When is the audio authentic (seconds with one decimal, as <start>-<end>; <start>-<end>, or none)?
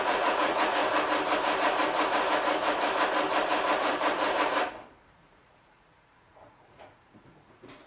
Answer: 0.8-5.1